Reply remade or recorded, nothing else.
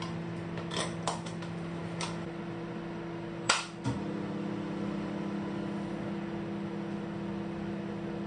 remade